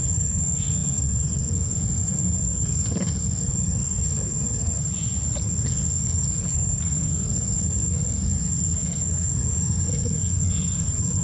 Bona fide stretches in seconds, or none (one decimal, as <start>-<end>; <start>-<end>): 4.8-5.4